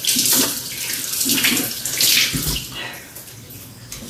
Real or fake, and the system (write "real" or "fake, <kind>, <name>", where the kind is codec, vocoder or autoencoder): real